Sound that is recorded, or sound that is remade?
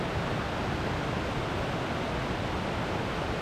recorded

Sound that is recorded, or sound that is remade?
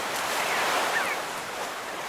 remade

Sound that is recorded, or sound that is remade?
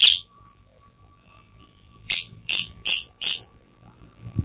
remade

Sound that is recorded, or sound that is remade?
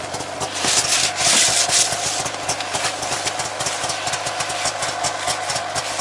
recorded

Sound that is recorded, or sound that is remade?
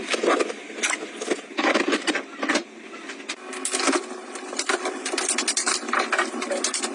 recorded